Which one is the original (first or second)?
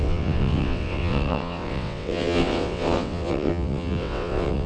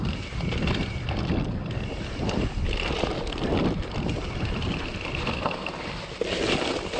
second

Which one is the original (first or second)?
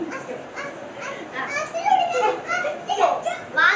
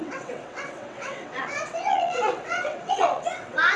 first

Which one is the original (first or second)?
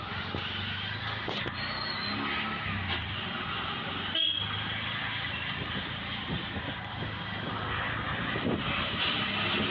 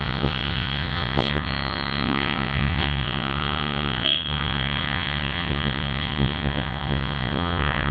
first